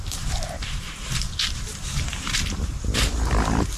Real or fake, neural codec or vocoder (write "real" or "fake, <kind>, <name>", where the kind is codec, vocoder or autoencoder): fake, vocoder, BigVGAN v2